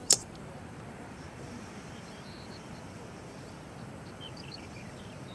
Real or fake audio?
fake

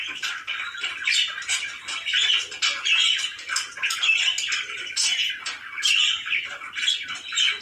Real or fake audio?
real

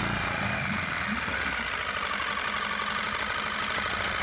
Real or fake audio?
real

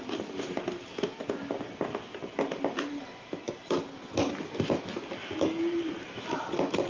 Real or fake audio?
real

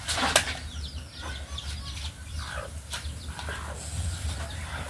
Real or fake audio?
real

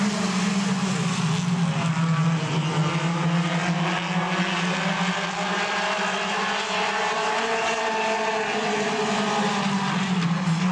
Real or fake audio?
real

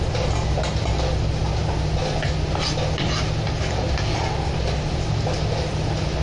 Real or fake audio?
real